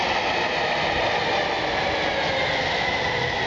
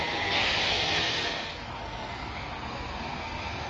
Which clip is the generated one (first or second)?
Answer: second